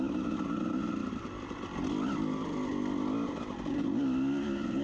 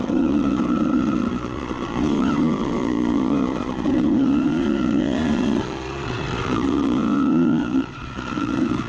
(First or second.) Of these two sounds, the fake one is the second